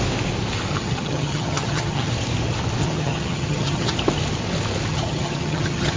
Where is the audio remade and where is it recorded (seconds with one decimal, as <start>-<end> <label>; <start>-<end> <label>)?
0.0-0.7 recorded; 0.7-2.1 remade; 2.1-2.8 recorded; 2.8-3.9 remade; 3.9-4.9 recorded; 4.9-6.0 remade